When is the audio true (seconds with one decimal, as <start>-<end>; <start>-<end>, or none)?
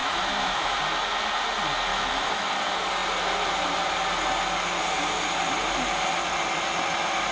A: 0.8-1.9; 2.5-7.3